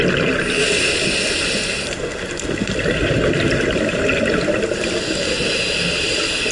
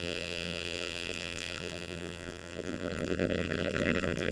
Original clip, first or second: first